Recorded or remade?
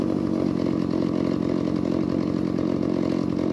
recorded